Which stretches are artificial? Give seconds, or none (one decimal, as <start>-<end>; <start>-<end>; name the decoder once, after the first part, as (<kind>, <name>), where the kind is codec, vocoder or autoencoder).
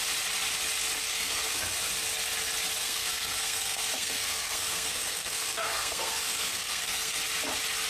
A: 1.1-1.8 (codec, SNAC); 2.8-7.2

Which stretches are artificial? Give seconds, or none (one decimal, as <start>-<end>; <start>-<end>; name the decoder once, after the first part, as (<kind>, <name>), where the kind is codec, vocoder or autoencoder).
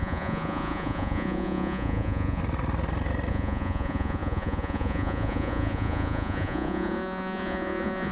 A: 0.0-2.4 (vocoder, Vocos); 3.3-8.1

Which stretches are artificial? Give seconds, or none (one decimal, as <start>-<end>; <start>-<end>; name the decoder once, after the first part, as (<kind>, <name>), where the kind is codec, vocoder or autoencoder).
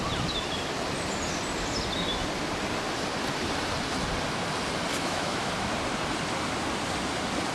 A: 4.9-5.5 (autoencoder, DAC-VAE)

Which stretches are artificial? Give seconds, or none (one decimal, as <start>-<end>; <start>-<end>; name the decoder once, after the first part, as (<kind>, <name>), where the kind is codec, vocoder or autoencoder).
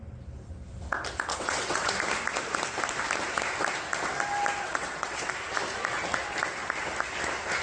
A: 1.3-1.9 (vocoder, WaveNeXt); 4.7-5.3